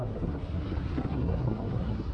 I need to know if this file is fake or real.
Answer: fake